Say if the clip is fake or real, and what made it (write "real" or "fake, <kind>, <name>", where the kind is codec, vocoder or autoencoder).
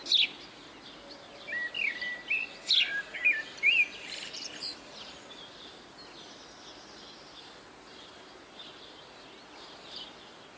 real